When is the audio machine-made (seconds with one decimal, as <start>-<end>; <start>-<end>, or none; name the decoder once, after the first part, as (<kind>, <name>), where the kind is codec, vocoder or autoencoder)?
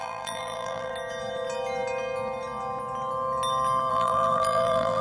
0.0-0.9 (vocoder, BigVGAN v2); 3.9-5.0